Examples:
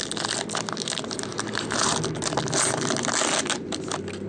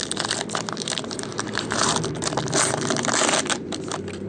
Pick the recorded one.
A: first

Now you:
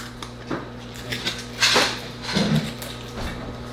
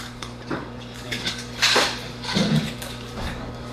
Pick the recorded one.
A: first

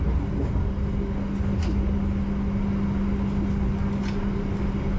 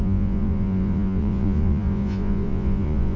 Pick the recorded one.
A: first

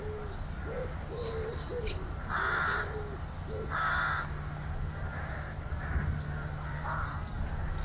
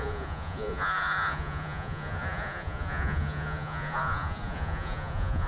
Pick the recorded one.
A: first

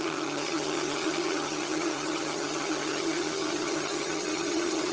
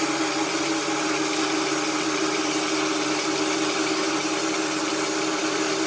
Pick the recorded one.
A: second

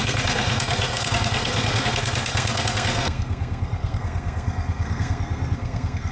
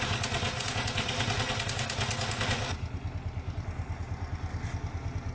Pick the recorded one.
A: second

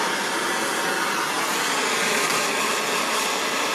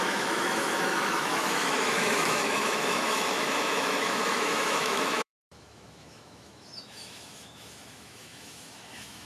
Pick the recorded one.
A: first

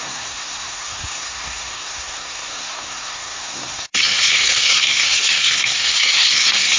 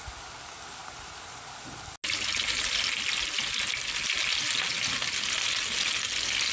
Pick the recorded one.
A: second